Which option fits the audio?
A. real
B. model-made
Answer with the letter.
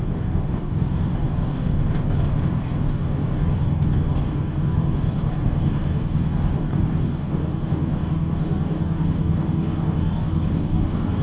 B